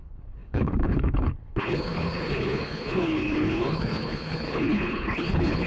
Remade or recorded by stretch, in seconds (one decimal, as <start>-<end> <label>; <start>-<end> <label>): 0.0-5.7 remade